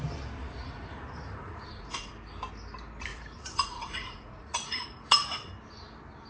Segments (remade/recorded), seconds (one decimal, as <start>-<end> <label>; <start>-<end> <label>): 0.0-0.4 recorded; 0.4-2.1 remade; 2.1-3.1 recorded; 3.1-5.1 remade; 5.1-6.3 recorded